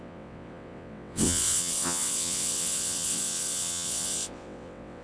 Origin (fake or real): fake